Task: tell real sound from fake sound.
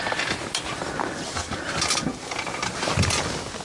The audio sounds real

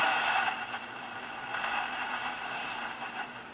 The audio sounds fake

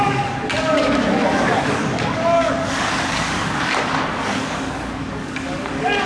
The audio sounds fake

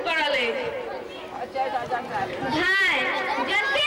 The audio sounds real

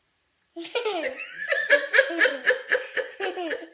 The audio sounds fake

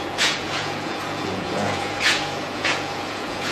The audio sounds fake